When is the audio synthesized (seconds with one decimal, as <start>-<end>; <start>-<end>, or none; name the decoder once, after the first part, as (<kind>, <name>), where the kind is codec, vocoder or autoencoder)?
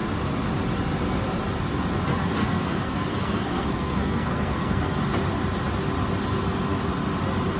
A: 2.4-5.0 (codec, SNAC)